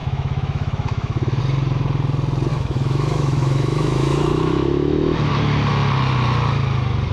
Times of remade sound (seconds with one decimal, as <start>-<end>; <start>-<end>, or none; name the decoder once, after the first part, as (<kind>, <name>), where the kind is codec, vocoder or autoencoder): 0.0-1.4 (autoencoder, DAC-VAE); 2.5-5.3